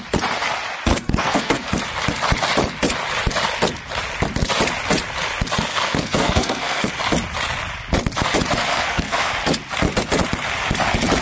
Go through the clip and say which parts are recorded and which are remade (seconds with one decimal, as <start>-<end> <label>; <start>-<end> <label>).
0.0-0.9 recorded; 0.9-1.7 remade; 1.7-5.7 recorded; 5.7-6.9 remade; 6.9-8.7 recorded; 8.7-9.3 remade; 9.3-11.2 recorded